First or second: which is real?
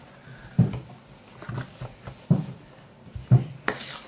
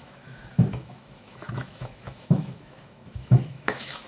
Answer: first